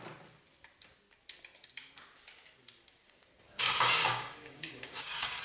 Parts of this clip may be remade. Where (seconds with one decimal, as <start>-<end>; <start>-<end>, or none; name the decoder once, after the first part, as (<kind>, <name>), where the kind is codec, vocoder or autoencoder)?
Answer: 4.0-5.4 (codec, DAC)